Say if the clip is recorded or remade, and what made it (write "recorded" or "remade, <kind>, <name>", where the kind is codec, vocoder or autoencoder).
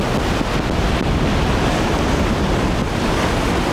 recorded